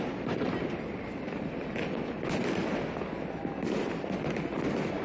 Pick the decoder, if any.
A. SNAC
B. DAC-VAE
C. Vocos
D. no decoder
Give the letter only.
D